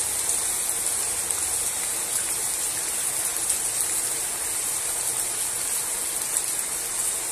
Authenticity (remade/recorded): recorded